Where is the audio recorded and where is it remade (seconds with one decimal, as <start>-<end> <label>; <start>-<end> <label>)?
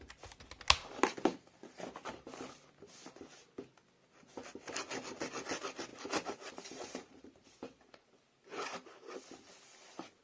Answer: 0.0-5.9 recorded; 5.9-8.5 remade; 8.5-10.2 recorded